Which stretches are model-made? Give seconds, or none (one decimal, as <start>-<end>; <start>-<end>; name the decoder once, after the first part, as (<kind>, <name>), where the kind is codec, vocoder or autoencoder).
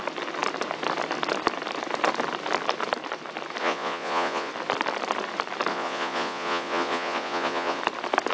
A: 3.6-4.5 (vocoder, Vocos); 5.7-7.8